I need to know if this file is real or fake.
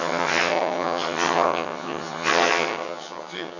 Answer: fake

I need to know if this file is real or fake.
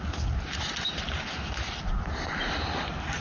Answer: real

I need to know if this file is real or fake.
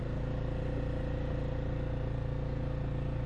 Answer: real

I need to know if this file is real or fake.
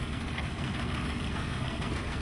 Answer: fake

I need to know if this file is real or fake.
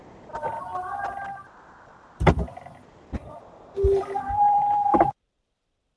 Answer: fake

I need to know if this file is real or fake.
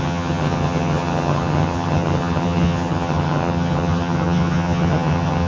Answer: fake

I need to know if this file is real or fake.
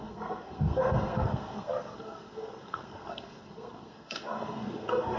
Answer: fake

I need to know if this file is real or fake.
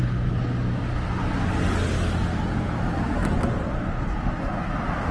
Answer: real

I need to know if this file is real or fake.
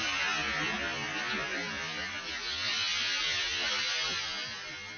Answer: real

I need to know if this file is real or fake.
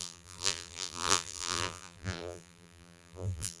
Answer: fake